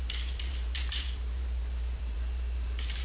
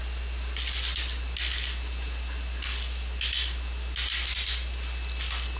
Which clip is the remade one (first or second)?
first